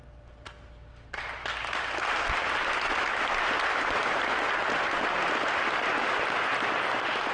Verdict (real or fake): real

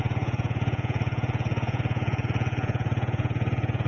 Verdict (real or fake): fake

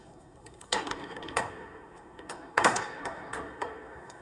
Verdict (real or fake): fake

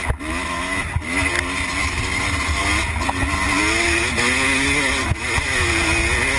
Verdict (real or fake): real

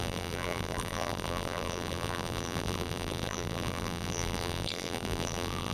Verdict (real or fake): fake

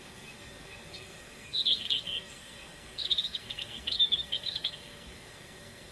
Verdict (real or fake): fake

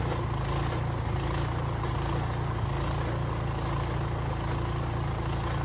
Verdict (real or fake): real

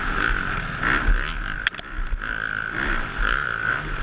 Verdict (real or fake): real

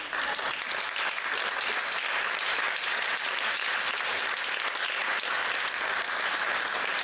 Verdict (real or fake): real